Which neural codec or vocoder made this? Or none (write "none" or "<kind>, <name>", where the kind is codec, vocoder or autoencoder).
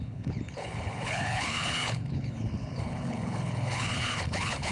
codec, HILCodec